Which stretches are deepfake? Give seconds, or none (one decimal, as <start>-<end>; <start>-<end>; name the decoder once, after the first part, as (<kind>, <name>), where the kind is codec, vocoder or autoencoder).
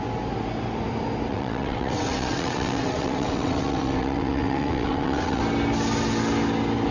1.3-5.4 (vocoder, WaveNeXt)